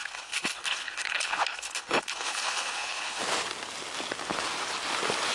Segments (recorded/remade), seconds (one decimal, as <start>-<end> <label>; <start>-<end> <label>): 0.0-3.2 remade; 3.2-5.3 recorded